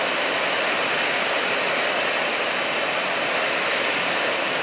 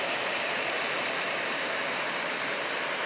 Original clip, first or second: first